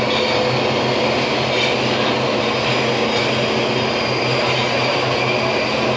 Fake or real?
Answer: real